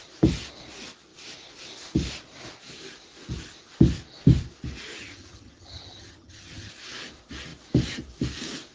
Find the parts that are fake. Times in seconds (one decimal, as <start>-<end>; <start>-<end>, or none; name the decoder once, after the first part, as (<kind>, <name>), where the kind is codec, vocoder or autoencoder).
5.0-6.7 (vocoder, HiFi-GAN)